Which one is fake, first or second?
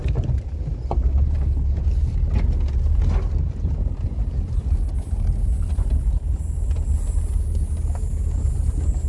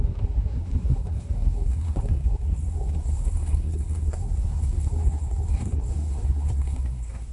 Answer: second